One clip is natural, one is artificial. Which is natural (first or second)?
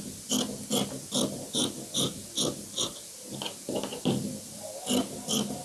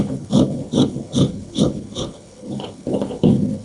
first